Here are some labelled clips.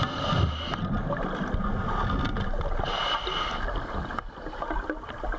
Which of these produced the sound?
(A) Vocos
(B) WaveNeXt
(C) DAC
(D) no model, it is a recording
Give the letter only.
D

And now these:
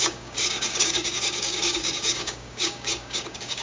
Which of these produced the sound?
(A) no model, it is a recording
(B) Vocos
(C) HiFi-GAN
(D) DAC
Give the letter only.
D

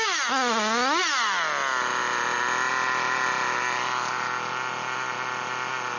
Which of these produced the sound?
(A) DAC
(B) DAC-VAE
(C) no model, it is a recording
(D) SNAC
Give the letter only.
C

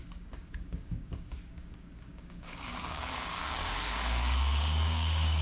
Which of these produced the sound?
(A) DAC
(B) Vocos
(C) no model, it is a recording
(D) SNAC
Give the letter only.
A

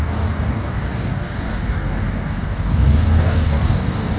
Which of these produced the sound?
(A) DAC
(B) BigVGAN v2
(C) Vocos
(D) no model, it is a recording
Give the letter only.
A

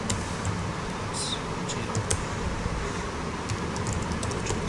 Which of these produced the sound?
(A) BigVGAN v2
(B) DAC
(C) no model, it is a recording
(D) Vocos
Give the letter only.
C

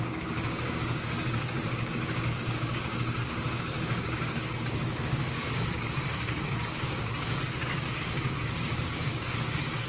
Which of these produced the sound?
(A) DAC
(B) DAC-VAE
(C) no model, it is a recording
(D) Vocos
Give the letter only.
A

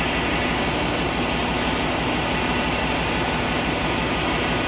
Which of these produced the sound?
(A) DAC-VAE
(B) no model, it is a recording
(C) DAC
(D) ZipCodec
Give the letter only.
B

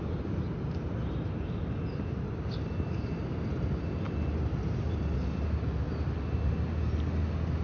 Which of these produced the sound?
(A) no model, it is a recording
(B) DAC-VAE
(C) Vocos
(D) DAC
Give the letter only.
A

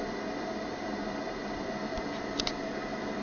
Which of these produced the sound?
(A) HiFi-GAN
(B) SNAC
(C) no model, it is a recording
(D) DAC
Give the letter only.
C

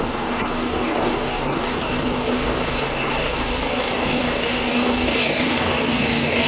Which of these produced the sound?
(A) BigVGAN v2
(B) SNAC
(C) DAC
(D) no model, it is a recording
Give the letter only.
C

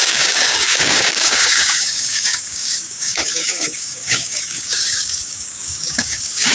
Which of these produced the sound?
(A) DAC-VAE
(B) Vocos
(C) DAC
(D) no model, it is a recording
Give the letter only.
C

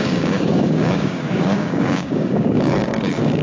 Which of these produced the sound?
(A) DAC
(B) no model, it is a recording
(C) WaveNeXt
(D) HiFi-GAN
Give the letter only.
A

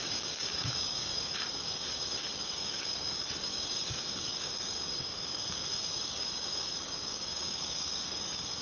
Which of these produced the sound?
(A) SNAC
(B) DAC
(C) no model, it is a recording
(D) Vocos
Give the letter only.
B